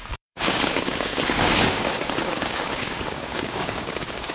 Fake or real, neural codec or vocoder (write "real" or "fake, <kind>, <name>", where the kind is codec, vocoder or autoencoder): fake, codec, DAC